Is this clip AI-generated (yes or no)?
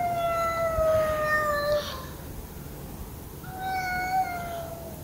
no